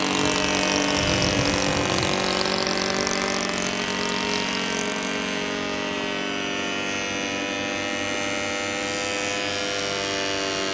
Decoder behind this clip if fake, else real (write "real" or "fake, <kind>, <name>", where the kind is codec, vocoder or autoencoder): real